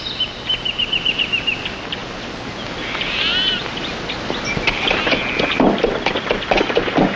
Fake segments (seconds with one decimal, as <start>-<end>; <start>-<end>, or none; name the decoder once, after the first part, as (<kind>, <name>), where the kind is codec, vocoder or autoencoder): none